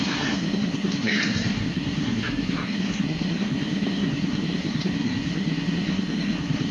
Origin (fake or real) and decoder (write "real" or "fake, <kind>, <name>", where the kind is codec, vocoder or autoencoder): fake, codec, SNAC